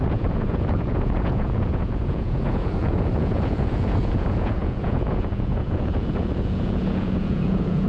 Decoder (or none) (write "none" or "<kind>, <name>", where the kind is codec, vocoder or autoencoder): vocoder, Vocos